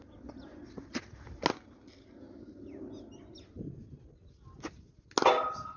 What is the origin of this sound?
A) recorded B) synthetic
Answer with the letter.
A